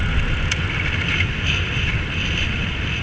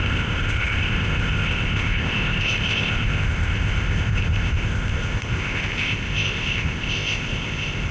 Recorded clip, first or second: first